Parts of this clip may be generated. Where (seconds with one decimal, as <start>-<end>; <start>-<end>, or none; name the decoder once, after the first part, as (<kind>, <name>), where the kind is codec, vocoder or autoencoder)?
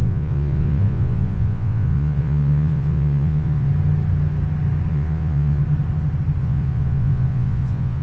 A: 0.0-3.7 (vocoder, Vocos); 4.9-5.6; 6.4-8.0